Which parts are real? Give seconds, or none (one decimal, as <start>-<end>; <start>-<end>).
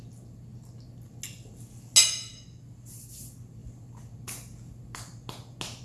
0.0-5.8